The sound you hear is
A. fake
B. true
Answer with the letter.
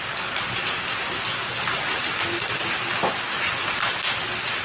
B